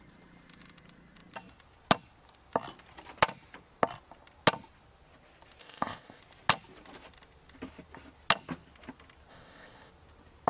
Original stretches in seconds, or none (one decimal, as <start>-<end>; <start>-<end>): 0.0-5.6; 6.2-9.3; 9.9-10.5